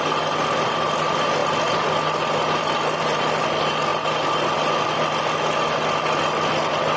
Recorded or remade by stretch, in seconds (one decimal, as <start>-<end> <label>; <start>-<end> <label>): 0.0-7.0 recorded